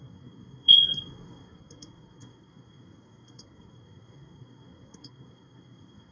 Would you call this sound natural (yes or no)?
no